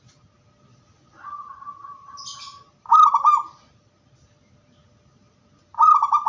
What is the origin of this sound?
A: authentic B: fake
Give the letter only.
A